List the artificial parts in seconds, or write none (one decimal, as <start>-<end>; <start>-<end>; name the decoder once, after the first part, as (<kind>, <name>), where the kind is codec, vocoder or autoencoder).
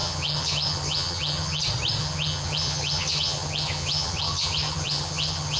0.0-1.6 (vocoder, HiFi-GAN); 2.0-5.6